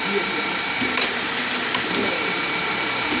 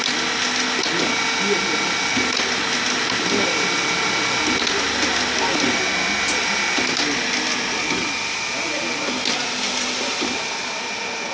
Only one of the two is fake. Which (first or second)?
first